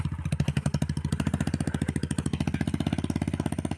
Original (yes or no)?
yes